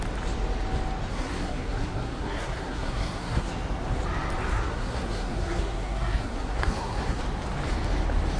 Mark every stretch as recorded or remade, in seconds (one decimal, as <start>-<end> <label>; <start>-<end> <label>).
0.0-1.1 recorded; 1.1-3.5 remade; 3.5-4.5 recorded; 4.5-7.2 remade; 7.2-8.4 recorded